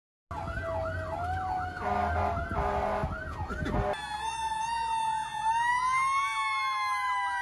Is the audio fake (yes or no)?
no